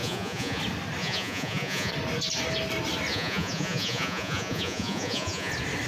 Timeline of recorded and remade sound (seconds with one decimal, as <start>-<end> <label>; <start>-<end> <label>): 0.0-0.6 remade; 0.6-1.0 recorded; 1.0-1.9 remade; 1.9-3.1 recorded; 3.1-5.5 remade; 5.5-5.9 recorded